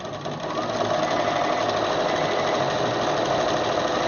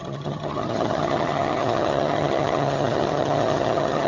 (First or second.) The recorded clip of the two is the first